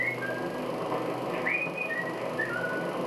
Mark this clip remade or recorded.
recorded